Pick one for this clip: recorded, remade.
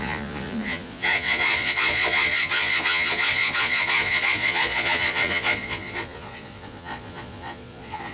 remade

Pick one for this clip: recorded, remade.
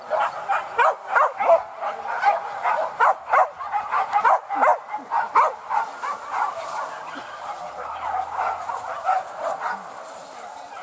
recorded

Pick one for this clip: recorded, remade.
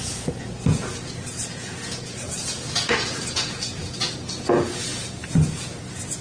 remade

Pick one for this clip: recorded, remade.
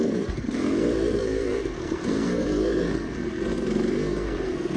remade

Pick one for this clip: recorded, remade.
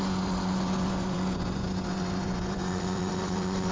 remade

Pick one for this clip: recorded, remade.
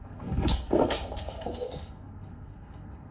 remade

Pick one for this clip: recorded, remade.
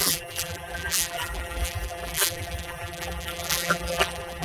remade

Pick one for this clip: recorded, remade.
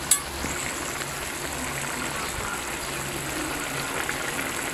recorded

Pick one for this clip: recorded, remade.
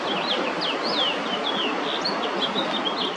recorded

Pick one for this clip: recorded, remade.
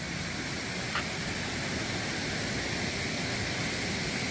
recorded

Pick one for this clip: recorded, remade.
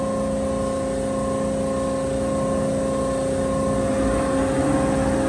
recorded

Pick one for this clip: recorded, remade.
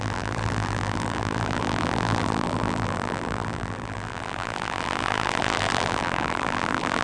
remade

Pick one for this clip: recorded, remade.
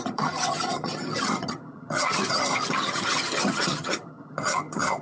remade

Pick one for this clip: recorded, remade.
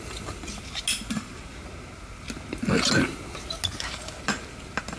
recorded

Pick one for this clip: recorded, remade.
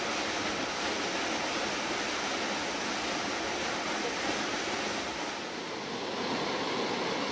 recorded